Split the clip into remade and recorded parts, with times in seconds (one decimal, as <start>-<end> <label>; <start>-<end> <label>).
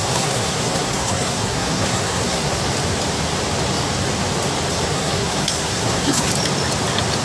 0.0-2.6 remade; 2.6-4.7 recorded; 4.7-6.3 remade; 6.3-7.2 recorded